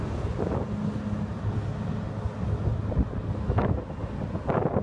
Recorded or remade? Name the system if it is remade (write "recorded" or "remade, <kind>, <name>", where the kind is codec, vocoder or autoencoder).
recorded